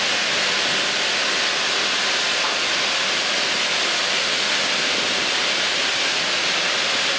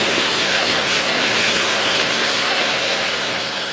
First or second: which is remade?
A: second